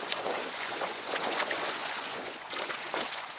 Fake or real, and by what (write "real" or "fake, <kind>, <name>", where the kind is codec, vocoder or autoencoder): fake, vocoder, Vocos